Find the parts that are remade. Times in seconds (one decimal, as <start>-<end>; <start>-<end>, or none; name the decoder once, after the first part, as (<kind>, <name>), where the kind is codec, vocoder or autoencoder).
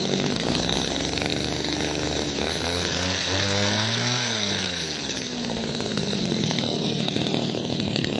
0.0-8.2 (codec, SNAC)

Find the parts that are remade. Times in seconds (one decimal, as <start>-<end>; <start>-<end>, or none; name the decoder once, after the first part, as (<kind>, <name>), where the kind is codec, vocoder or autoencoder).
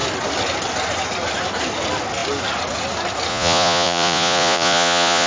3.3-5.3 (vocoder, Vocos)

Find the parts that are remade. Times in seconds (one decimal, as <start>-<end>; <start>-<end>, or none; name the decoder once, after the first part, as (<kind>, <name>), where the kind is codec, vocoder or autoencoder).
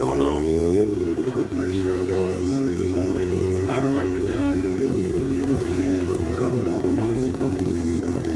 0.0-8.4 (codec, SNAC)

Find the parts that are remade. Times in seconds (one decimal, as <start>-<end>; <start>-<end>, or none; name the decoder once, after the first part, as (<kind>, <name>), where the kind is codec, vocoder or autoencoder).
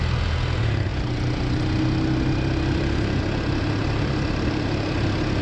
none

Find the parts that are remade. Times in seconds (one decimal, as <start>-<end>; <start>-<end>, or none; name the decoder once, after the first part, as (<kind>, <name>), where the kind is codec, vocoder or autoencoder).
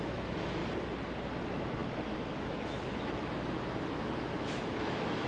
0.0-0.6 (autoencoder, DAC-VAE); 1.4-5.3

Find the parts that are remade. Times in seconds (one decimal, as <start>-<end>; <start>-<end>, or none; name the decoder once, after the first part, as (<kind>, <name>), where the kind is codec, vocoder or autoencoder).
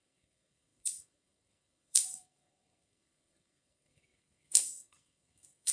0.0-5.7 (codec, SNAC)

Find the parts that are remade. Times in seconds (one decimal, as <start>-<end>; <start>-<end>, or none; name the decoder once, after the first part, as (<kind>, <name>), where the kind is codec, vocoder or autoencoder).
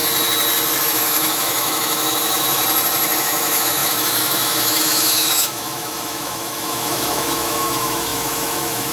0.8-2.6 (autoencoder, DAC-VAE); 3.2-8.9